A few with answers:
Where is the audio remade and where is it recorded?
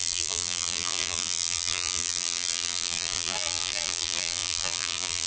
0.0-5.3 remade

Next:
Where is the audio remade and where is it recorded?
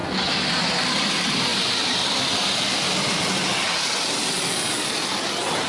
0.0-1.5 recorded; 1.5-3.2 remade; 3.2-5.7 recorded